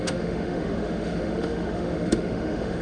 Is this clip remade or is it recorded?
remade